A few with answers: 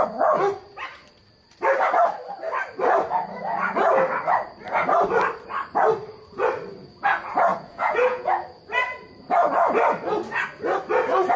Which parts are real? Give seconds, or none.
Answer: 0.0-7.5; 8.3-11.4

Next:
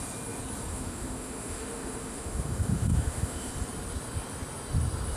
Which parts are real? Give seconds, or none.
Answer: 0.0-0.7; 3.5-5.2

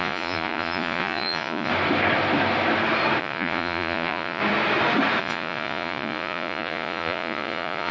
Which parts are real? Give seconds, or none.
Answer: 1.7-3.2; 4.4-5.2

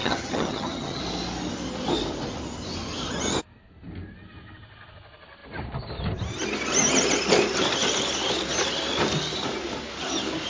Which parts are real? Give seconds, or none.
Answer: 1.0-10.5

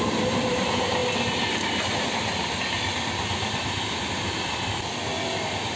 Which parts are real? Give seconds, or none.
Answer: 1.0-4.2; 5.1-5.8

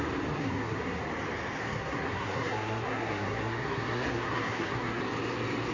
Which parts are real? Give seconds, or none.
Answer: 0.0-0.4; 1.0-1.6; 5.0-5.7

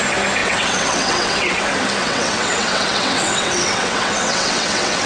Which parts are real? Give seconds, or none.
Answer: 0.0-0.4; 1.6-2.0